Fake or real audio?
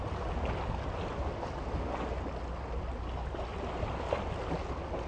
real